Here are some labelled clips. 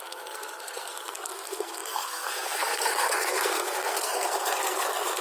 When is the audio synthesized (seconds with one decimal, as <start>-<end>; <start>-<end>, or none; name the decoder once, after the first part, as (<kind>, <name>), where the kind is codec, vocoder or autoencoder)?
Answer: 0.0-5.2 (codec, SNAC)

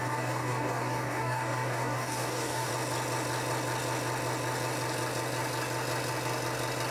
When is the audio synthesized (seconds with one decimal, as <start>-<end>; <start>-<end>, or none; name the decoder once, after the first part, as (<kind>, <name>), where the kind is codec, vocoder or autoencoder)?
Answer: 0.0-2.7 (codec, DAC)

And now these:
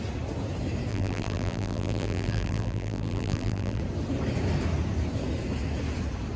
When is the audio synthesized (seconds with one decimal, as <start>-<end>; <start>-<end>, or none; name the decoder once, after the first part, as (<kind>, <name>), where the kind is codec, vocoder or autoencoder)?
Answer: 0.9-3.8 (vocoder, BigVGAN v2)

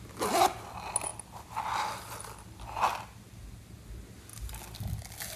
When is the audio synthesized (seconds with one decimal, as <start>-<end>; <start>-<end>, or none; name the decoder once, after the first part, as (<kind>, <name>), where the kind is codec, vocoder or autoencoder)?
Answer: none

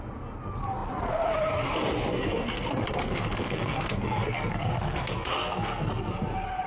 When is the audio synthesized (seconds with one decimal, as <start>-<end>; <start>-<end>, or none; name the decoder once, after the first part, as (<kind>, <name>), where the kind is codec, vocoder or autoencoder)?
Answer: 2.1-6.1 (codec, SNAC)